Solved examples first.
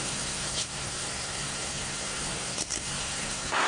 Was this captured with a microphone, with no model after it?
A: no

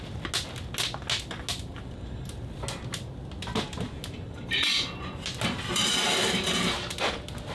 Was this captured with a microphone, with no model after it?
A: yes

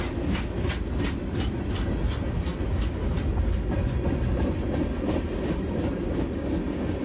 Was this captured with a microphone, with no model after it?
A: yes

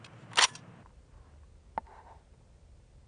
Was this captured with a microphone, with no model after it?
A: yes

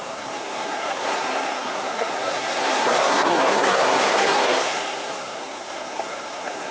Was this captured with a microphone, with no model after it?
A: no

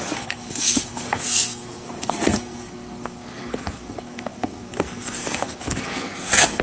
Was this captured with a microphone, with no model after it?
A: no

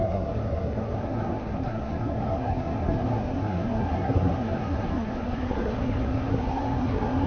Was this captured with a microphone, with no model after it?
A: no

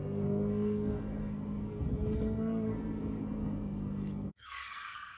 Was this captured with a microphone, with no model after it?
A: no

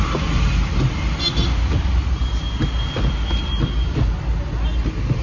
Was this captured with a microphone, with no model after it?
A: yes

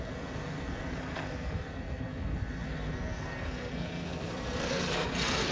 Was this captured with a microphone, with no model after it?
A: no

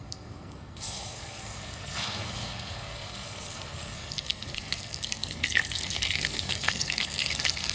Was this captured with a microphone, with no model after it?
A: no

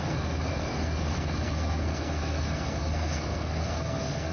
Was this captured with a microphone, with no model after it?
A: no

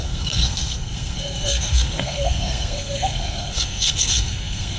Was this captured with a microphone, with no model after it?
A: no